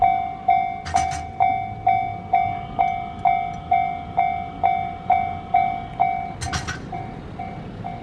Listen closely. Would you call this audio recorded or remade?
recorded